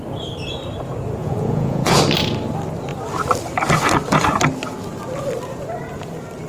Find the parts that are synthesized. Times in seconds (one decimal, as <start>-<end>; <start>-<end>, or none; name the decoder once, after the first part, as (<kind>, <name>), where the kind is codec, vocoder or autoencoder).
1.2-2.0 (vocoder, Vocos)

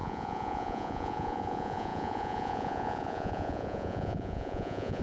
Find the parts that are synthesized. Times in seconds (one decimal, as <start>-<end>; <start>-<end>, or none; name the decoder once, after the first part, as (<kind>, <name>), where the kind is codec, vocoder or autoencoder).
0.0-5.0 (vocoder, Vocos)

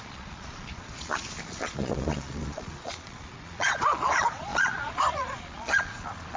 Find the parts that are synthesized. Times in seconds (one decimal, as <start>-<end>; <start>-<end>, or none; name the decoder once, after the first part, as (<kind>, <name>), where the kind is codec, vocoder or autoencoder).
0.0-6.4 (vocoder, Vocos)

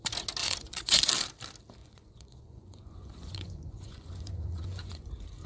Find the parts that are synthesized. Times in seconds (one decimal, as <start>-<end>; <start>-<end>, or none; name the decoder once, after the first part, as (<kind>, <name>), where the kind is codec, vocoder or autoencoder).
0.4-1.1 (vocoder, Vocos); 1.8-5.1

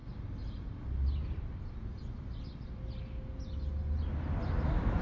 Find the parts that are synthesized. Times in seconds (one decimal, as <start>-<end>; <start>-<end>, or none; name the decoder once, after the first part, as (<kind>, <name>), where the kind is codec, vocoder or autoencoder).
none

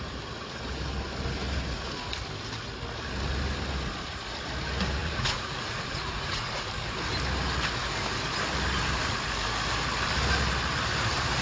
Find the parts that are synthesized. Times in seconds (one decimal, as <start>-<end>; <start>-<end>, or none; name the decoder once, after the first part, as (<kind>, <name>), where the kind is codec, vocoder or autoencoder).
5.0-6.7 (vocoder, Vocos)

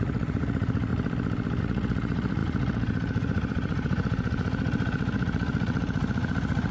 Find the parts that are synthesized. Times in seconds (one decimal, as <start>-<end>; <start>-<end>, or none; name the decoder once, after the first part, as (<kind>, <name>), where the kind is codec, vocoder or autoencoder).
0.0-0.9 (vocoder, Vocos); 1.6-6.7